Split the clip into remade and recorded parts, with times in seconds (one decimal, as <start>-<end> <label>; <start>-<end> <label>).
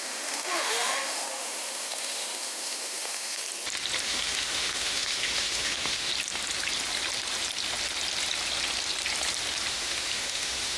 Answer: 0.0-3.4 remade; 3.4-4.0 recorded; 4.0-6.1 remade; 6.1-9.7 recorded; 9.7-10.8 remade